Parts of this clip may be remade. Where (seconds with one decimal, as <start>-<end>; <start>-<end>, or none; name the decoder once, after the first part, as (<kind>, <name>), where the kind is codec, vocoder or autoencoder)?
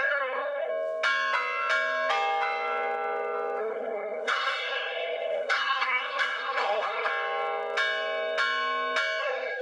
0.0-0.7 (codec, SNAC); 3.6-7.1; 9.2-9.6